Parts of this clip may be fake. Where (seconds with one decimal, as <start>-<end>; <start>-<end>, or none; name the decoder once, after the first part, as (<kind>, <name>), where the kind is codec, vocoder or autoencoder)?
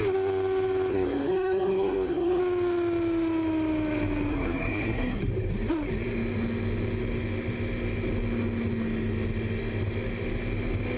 0.9-2.4 (codec, SNAC); 4.3-5.3